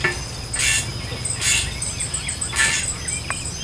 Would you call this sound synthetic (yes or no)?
no